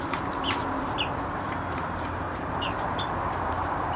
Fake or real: fake